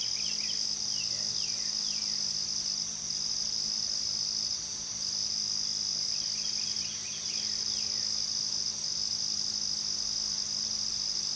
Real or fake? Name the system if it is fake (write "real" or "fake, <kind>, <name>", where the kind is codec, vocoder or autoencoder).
real